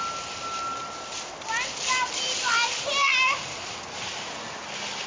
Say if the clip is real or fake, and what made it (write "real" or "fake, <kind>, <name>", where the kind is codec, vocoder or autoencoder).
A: real